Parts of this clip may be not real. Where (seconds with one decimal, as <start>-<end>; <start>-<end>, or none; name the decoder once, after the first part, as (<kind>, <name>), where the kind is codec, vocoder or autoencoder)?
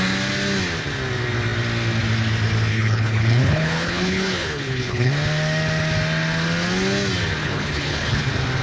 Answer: 2.7-5.1 (codec, HILCodec); 7.4-8.2